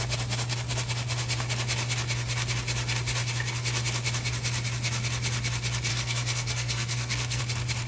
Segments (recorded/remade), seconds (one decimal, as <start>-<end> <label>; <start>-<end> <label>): 0.0-5.9 recorded; 5.9-7.4 remade; 7.4-7.9 recorded